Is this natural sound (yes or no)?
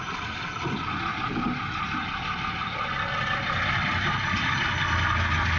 yes